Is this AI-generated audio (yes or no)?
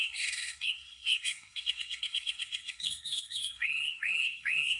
yes